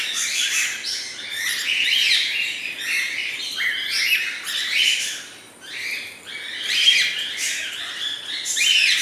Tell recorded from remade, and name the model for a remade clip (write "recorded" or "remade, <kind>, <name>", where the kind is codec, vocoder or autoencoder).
remade, vocoder, BigVGAN v2